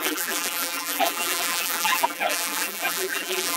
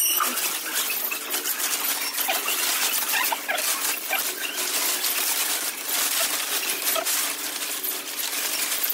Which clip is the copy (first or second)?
first